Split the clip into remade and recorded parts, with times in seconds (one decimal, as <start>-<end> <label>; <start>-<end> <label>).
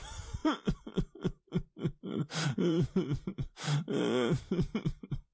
0.0-5.3 remade